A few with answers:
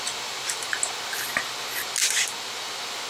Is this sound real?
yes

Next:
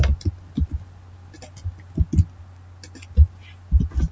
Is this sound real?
yes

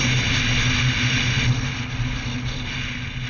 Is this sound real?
yes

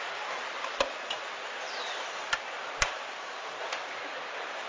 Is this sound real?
yes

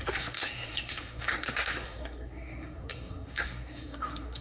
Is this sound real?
no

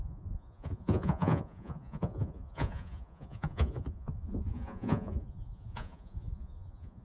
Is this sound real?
no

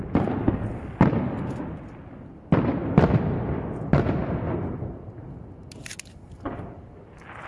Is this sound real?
yes